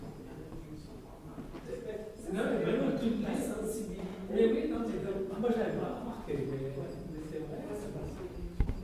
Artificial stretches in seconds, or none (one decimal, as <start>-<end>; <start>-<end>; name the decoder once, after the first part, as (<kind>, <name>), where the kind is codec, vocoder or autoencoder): none